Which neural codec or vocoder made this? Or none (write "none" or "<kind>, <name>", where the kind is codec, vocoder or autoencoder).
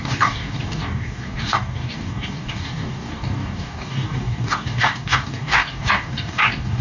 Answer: codec, DAC